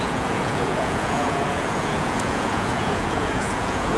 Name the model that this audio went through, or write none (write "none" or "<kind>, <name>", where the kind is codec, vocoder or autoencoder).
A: vocoder, Vocos